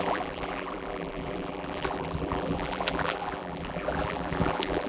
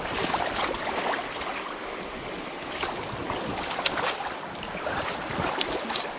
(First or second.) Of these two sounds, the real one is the second